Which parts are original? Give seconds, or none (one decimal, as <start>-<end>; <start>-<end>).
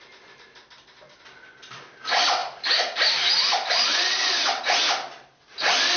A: 0.0-3.9; 4.6-6.0